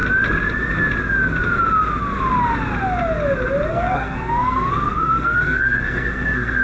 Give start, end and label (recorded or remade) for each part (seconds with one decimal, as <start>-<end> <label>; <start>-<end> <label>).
0.0-3.7 recorded; 3.7-6.6 remade